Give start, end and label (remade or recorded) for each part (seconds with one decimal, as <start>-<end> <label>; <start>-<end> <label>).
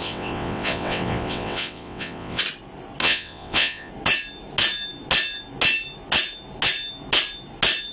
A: 0.0-2.4 remade; 2.4-3.0 recorded; 3.0-3.9 remade; 3.9-7.9 recorded